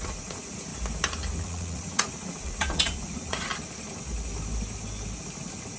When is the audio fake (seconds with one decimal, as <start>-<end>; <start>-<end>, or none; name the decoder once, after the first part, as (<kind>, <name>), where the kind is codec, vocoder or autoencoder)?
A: 0.0-0.7 (vocoder, Vocos); 1.4-3.5